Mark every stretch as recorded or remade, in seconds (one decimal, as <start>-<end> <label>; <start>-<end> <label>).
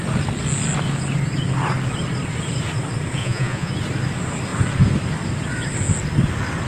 0.0-3.2 recorded; 3.2-3.7 remade; 3.7-6.7 recorded